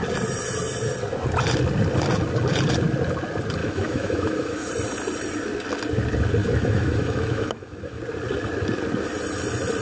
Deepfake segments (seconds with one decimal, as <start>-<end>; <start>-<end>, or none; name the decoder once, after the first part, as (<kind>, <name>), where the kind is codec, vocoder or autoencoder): 3.6-4.7 (autoencoder, DAC-VAE); 6.4-8.0